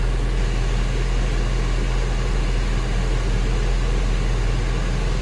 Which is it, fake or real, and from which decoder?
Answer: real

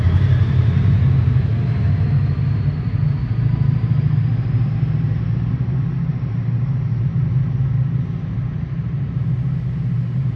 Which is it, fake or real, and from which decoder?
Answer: fake, vocoder, BigVGAN v2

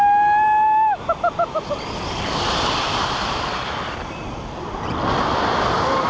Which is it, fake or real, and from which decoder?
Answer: real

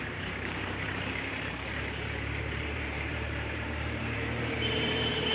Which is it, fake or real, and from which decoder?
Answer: fake, vocoder, BigVGAN v2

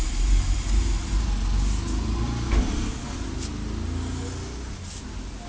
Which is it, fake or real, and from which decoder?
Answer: real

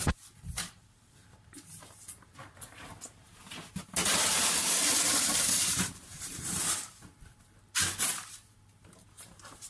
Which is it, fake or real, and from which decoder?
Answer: fake, vocoder, BigVGAN v2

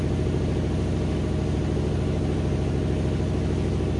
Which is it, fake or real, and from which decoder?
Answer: real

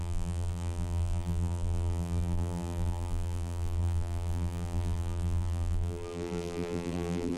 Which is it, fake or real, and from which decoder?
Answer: fake, vocoder, BigVGAN v2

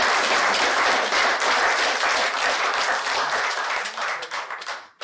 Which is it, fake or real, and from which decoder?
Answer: fake, vocoder, BigVGAN v2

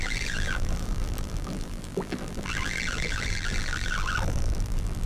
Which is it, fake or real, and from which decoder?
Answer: fake, vocoder, BigVGAN v2